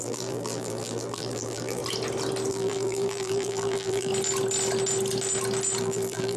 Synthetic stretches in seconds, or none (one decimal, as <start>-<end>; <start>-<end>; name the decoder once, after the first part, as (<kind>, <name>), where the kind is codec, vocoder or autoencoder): 0.0-1.8 (vocoder, BigVGAN v2); 2.5-4.1; 5.8-6.4